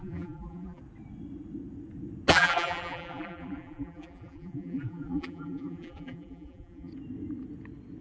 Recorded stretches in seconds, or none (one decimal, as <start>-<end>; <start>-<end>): 0.8-2.3; 6.9-8.0